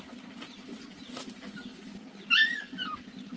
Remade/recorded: recorded